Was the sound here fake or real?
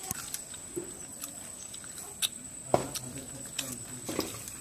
real